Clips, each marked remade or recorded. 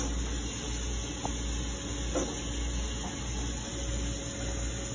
recorded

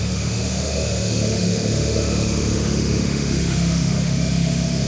remade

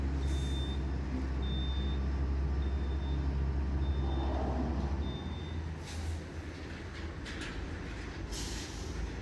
recorded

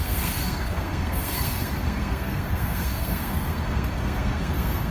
remade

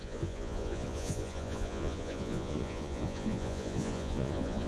remade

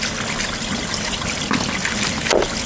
recorded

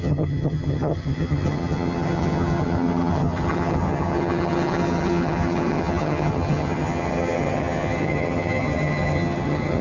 remade